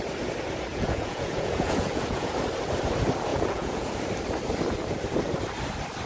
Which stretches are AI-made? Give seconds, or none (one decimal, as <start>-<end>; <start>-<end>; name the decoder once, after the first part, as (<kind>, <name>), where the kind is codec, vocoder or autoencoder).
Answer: 0.7-2.3 (vocoder, Vocos); 3.3-4.0